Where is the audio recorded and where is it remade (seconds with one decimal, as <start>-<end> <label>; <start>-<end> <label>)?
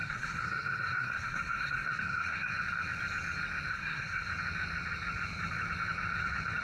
0.0-2.5 remade; 2.5-3.7 recorded; 3.7-4.3 remade; 4.3-6.6 recorded